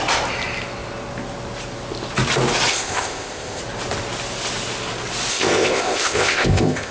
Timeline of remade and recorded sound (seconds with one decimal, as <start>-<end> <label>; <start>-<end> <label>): 0.0-2.7 recorded; 2.7-3.6 remade; 3.6-5.3 recorded; 5.3-6.9 remade

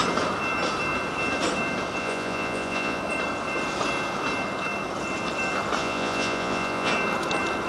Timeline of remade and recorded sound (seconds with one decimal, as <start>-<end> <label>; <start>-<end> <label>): 0.0-2.0 recorded; 2.0-3.0 remade; 3.0-5.8 recorded; 5.8-6.9 remade; 6.9-7.7 recorded

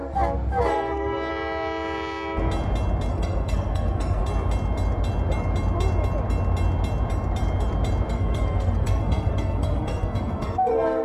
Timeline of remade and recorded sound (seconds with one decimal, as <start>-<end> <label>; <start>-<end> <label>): 0.0-0.7 recorded; 0.7-1.3 remade; 1.3-3.1 recorded; 3.1-4.2 remade; 4.2-8.1 recorded; 8.1-11.0 remade

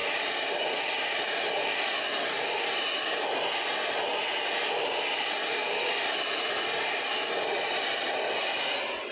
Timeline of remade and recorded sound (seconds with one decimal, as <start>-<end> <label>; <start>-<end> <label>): 0.0-9.1 recorded

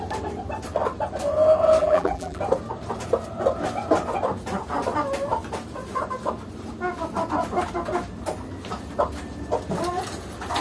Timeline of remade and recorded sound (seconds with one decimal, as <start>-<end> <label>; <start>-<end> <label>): 0.0-1.8 recorded; 1.8-2.4 remade; 2.4-10.6 recorded